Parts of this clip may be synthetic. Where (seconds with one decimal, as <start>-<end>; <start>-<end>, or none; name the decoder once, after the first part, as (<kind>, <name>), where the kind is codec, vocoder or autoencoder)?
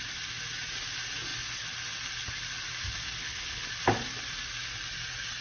3.2-3.7 (codec, HILCodec)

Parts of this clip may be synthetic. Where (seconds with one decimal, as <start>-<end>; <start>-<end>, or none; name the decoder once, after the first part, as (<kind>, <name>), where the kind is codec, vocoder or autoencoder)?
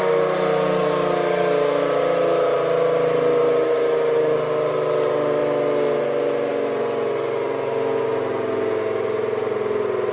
none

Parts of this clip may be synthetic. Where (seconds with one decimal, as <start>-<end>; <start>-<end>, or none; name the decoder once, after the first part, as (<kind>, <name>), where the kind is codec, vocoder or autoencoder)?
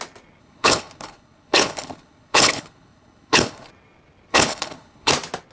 0.4-3.7 (codec, HILCodec); 4.3-5.1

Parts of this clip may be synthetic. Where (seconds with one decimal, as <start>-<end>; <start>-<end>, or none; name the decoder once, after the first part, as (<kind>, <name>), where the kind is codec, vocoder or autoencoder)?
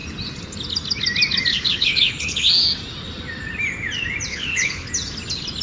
1.5-2.5 (codec, HILCodec); 4.3-4.9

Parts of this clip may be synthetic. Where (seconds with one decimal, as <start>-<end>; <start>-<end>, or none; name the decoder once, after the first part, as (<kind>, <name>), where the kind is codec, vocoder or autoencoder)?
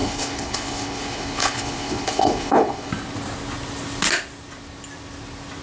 0.0-2.9 (codec, HILCodec)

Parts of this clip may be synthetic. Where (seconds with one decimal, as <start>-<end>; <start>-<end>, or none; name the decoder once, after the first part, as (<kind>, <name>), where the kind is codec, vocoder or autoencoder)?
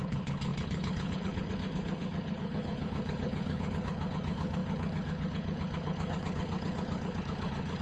0.0-7.8 (codec, HILCodec)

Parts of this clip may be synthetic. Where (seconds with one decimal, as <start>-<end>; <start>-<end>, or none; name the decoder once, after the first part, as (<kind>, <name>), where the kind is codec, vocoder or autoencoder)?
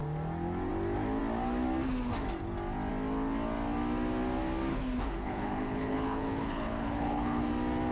4.7-7.5 (codec, HILCodec)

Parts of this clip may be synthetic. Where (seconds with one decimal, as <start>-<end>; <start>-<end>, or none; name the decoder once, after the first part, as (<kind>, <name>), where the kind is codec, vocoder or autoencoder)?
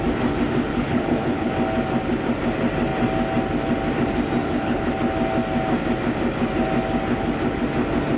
0.7-1.5 (codec, HILCodec); 4.4-4.9